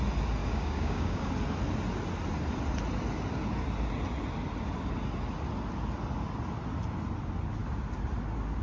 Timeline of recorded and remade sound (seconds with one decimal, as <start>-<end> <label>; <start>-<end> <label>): 0.0-0.4 recorded; 0.4-1.3 remade; 1.3-8.6 recorded